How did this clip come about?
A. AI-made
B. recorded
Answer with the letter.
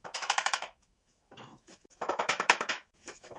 A